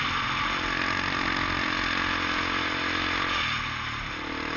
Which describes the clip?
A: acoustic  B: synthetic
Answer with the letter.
A